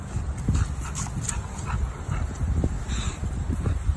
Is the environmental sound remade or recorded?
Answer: recorded